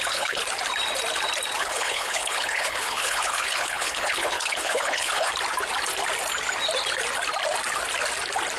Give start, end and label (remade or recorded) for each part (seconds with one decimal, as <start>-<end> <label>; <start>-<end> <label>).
0.0-0.4 remade; 0.4-1.6 recorded; 1.6-5.3 remade; 5.3-8.6 recorded